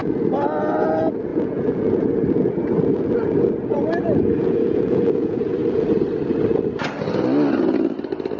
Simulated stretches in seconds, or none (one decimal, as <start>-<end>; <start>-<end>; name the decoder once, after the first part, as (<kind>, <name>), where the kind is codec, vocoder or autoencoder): 1.3-2.1 (vocoder, Vocos); 4.4-5.5